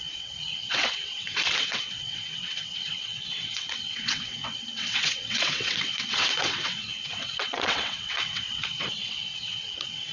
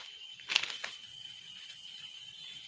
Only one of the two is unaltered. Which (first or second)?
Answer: second